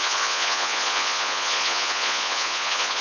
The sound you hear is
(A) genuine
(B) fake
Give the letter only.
B